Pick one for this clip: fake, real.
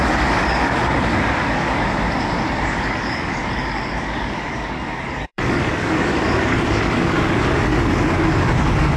fake